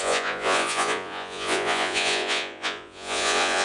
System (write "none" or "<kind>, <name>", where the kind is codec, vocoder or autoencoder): vocoder, Vocos